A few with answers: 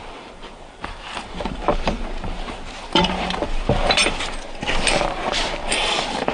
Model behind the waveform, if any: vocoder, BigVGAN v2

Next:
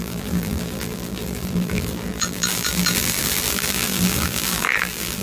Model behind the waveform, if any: vocoder, BigVGAN v2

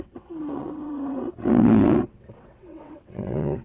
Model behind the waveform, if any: vocoder, WaveNeXt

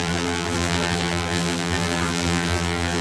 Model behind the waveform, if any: vocoder, BigVGAN v2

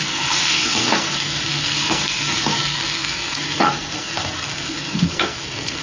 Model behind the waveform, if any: codec, SNAC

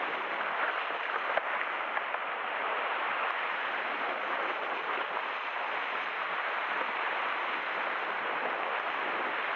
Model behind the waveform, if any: none